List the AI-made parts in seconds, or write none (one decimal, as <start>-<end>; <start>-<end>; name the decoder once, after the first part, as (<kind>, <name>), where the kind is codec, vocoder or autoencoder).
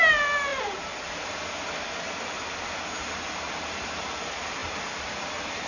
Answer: 0.5-3.9 (vocoder, BigVGAN v2); 4.6-5.7